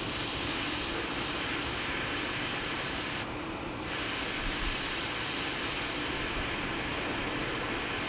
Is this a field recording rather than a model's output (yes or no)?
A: yes